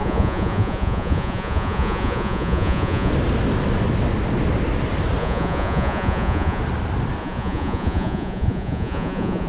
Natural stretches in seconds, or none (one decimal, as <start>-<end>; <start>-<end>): 3.1-5.2; 6.6-7.2